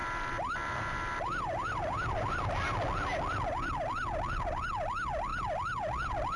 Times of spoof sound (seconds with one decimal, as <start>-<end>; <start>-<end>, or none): 0.0-2.5